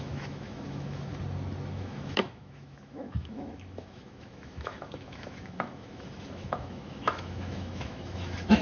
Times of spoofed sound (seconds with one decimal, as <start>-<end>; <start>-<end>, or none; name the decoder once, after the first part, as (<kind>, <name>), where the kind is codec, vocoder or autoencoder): 0.0-1.1 (autoencoder, DAC-VAE); 1.7-8.6